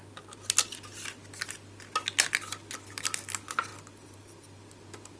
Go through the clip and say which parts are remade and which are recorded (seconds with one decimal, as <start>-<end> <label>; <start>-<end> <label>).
0.0-5.2 recorded